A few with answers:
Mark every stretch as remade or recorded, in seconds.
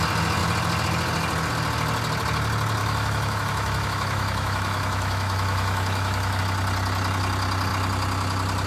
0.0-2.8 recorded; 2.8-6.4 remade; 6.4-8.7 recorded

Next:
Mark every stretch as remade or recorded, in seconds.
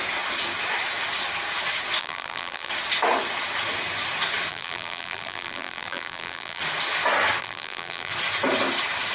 0.0-2.0 recorded; 2.0-2.7 remade; 2.7-4.5 recorded; 4.5-6.6 remade; 6.6-7.4 recorded; 7.4-8.1 remade; 8.1-9.1 recorded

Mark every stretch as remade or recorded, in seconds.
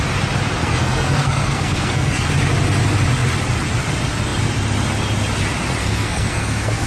0.0-0.6 recorded; 0.6-2.3 remade; 2.3-5.8 recorded; 5.8-6.9 remade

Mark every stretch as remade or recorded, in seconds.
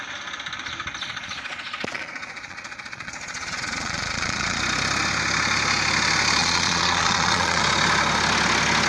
0.0-1.0 recorded; 1.0-4.6 remade; 4.6-6.4 recorded; 6.4-7.6 remade; 7.6-8.9 recorded